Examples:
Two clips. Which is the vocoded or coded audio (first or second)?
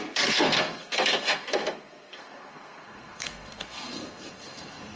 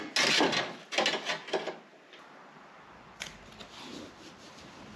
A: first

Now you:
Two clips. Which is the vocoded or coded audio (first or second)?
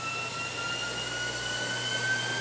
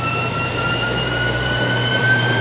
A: second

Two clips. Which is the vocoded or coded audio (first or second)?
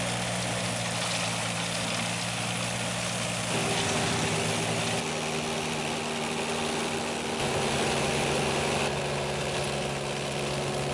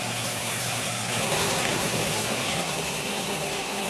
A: second